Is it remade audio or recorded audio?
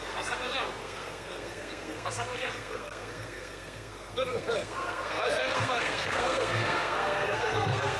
remade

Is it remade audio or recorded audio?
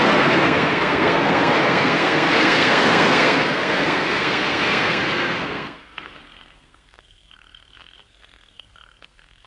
remade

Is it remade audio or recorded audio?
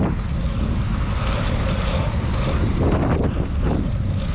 recorded